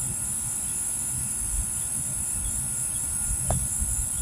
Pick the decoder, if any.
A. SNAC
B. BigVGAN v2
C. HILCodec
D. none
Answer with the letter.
D